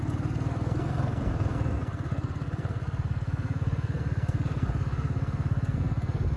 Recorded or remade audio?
remade